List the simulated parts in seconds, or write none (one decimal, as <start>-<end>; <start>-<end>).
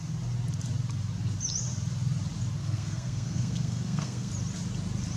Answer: 2.6-4.3